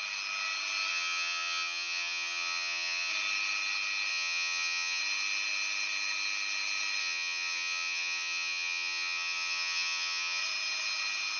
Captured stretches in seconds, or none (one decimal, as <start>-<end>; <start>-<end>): 0.0-0.9; 3.1-4.1; 5.0-7.0; 10.4-11.4